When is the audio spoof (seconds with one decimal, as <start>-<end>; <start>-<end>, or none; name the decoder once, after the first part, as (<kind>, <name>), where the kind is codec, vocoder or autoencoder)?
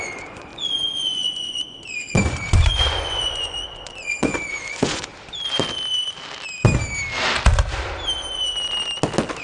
0.0-5.1 (vocoder, Vocos)